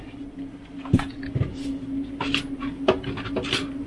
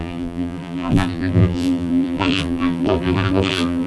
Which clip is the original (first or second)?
first